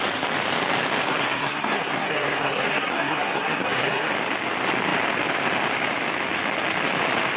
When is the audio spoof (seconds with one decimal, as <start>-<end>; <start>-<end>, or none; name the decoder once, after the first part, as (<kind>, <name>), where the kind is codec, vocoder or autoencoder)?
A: 1.1-4.1 (codec, SNAC)